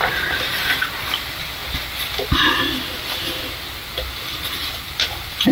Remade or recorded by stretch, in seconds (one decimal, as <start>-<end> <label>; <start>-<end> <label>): 0.0-1.6 remade; 1.6-4.9 recorded; 4.9-5.5 remade